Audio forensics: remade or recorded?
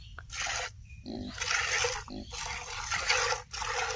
recorded